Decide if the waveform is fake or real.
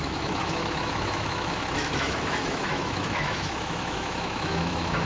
fake